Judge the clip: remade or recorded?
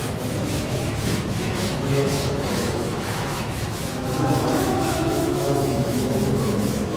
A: remade